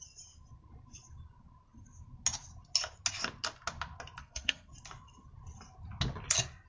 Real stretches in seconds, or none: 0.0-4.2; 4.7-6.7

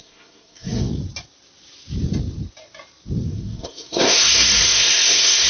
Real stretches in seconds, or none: 0.9-3.3

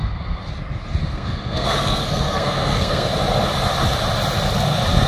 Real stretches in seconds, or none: 0.5-1.0; 3.1-5.1

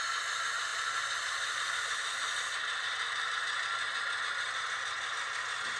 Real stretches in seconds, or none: 0.0-5.8

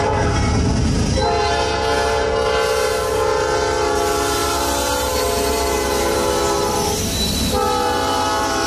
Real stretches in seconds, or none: 0.0-8.7

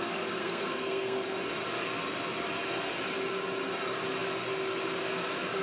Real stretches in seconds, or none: 0.0-0.4; 1.2-5.6

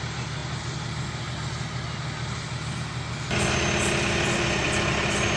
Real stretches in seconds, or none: 0.0-5.4

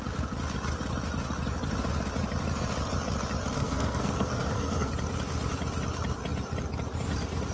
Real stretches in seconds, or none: 0.0-3.6; 4.9-7.5